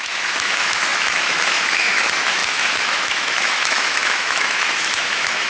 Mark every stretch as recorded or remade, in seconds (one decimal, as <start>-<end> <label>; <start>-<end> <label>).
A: 0.0-5.5 remade